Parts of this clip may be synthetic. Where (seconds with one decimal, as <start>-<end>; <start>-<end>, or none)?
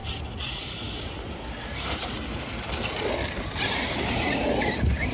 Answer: none